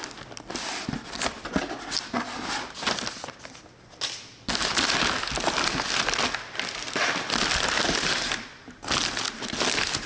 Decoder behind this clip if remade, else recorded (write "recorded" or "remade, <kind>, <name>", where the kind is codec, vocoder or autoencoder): recorded